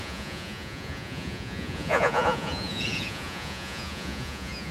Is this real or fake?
fake